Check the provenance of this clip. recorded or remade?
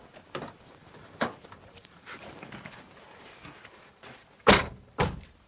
remade